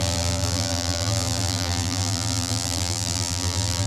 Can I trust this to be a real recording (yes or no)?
no